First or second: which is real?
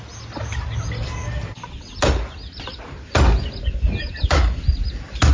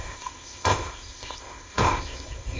first